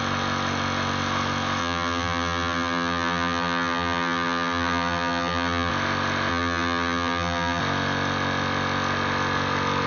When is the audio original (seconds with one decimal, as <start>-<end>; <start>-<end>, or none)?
0.0-1.6; 5.7-6.3; 7.6-9.9